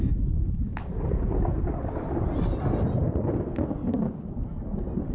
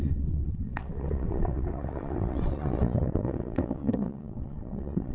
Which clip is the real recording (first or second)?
first